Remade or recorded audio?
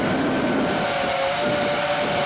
recorded